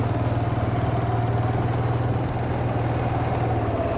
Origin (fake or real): real